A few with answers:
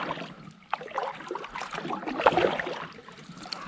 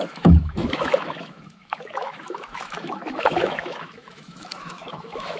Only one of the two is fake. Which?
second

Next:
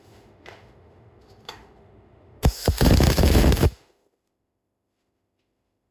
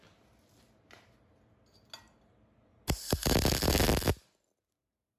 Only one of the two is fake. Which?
first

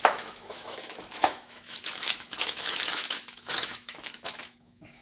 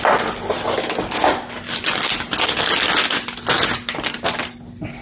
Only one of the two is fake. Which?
first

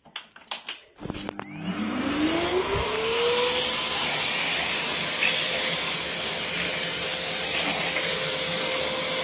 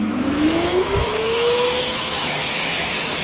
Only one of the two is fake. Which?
second